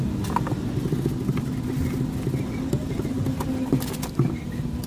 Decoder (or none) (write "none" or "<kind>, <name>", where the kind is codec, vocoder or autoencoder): none